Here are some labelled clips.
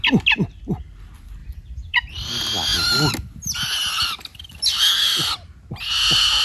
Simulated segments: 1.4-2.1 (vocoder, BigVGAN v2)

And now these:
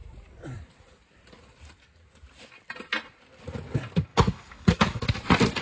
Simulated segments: 4.1-5.0 (codec, DAC)

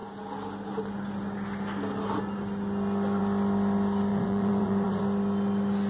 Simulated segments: 4.1-5.0 (vocoder, Vocos)

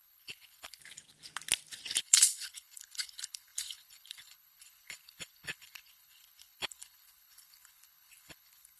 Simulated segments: 0.0-0.8 (codec, HILCodec); 2.0-8.8

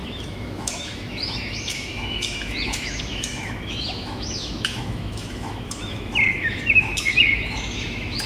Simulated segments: 0.0-8.3 (autoencoder, DAC-VAE)

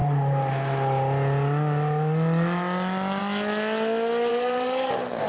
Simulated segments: 4.3-5.3 (vocoder, BigVGAN v2)

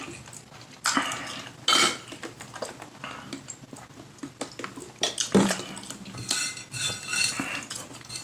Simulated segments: none